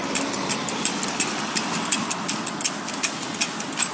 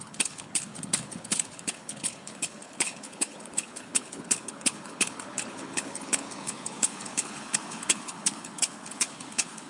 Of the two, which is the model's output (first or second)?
second